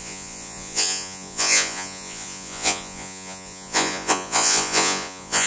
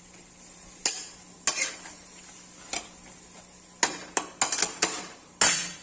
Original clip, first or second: second